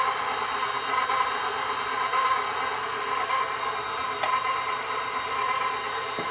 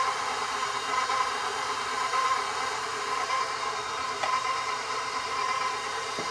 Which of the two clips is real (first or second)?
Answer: first